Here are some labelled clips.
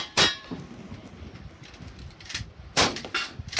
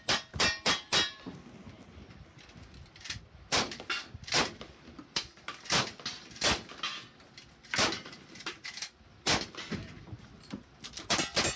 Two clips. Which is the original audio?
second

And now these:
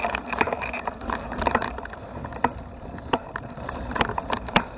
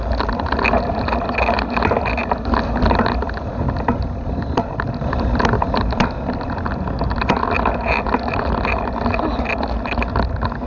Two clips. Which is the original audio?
second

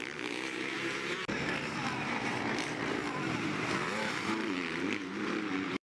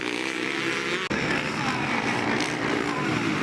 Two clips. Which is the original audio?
second